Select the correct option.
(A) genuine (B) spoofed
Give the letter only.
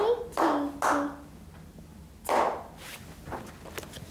A